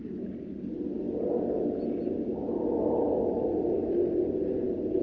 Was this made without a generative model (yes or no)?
yes